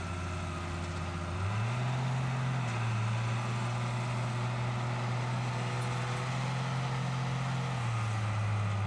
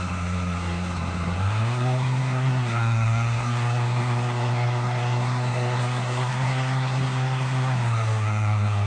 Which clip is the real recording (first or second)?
first